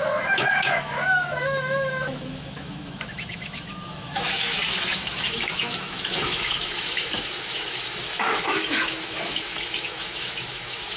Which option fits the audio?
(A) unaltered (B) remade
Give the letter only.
B